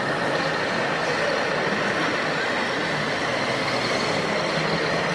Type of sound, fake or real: real